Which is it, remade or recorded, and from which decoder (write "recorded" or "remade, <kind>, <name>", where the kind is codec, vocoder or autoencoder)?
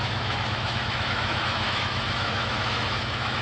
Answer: remade, autoencoder, DAC-VAE